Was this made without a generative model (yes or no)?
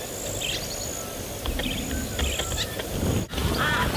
yes